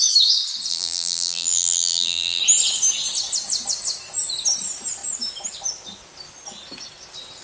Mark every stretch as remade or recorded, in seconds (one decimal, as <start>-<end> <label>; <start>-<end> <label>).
0.0-0.7 recorded; 0.7-2.4 remade; 2.4-7.4 recorded